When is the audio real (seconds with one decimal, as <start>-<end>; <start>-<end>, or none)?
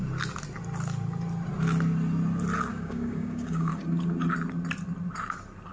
0.0-2.7; 3.7-5.7